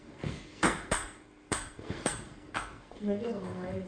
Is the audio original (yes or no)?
no